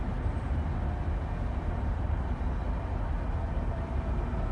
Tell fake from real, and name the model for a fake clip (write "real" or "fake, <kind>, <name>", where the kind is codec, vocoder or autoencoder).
real